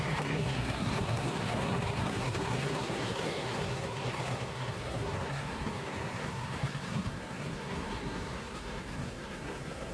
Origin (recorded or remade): remade